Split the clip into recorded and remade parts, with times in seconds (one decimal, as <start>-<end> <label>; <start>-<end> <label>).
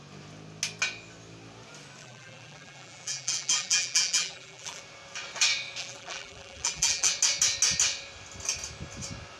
0.0-2.0 recorded; 2.0-4.8 remade; 4.8-5.8 recorded; 5.8-7.1 remade; 7.1-9.4 recorded